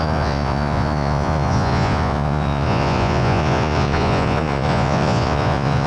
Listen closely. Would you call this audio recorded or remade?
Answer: remade